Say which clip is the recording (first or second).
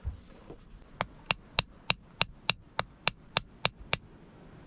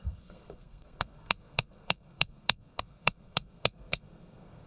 first